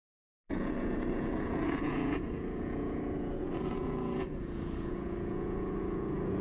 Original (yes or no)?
no